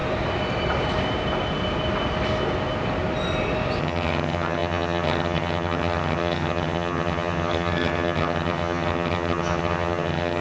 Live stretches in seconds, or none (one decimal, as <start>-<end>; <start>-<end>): 0.0-3.8